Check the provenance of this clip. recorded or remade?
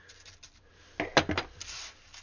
recorded